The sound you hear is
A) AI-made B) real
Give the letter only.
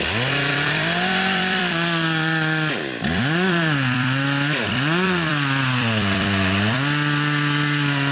A